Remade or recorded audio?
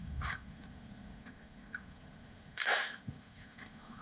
remade